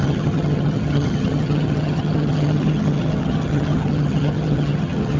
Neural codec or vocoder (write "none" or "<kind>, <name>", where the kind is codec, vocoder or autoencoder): vocoder, HiFi-GAN